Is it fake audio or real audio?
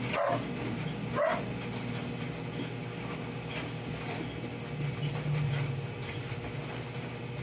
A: fake